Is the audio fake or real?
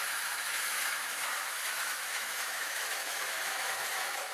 fake